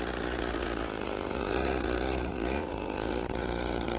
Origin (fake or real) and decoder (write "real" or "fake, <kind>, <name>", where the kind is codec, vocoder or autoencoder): fake, vocoder, Vocos